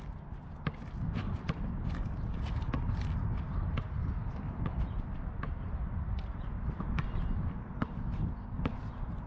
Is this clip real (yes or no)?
no